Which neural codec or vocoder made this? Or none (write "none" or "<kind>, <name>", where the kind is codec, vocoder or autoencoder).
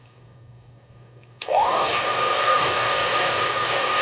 codec, DAC